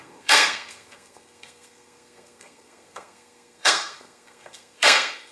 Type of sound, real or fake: fake